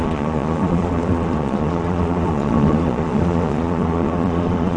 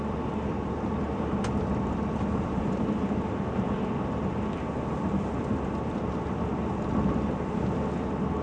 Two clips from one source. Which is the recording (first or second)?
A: second